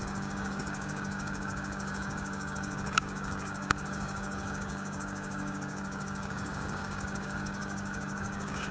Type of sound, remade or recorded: remade